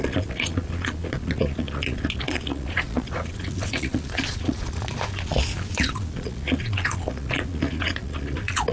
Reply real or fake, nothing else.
fake